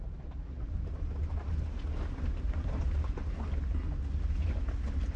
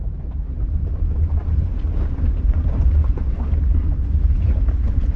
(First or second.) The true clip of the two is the first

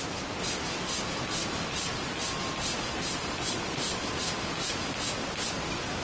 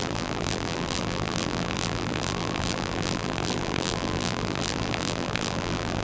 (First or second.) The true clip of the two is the first